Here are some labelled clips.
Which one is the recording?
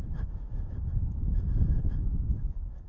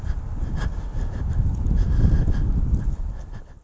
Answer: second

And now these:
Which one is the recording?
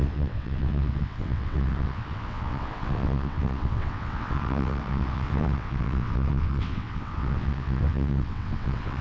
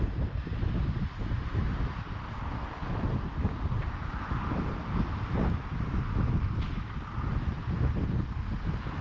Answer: second